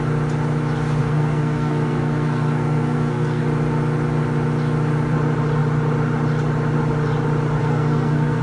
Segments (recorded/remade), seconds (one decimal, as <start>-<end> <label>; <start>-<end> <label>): 0.0-1.0 recorded; 1.0-3.4 remade; 3.4-7.6 recorded; 7.6-8.4 remade

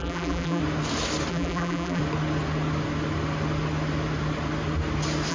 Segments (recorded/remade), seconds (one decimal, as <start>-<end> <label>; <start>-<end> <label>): 0.0-0.6 remade; 0.6-1.3 recorded; 1.3-2.0 remade; 2.0-5.3 recorded

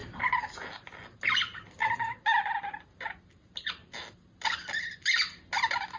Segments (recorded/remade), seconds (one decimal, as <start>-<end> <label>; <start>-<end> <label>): 0.0-1.0 remade; 1.0-6.0 recorded

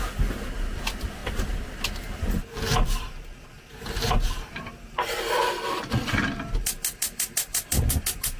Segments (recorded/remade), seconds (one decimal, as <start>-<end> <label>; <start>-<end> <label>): 0.0-3.5 recorded; 3.5-5.6 remade; 5.6-8.4 recorded